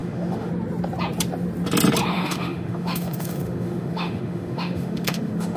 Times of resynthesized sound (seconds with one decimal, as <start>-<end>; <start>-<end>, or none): 0.0-0.5; 2.1-5.6